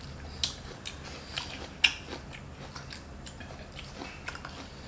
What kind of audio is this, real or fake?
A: real